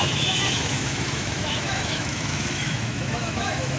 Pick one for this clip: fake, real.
fake